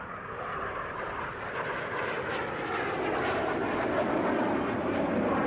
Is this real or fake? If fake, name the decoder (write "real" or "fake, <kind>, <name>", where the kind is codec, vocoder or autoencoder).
real